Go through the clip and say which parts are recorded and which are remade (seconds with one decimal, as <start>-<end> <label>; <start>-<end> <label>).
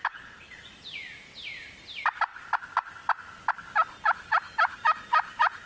0.0-1.2 remade; 1.2-5.7 recorded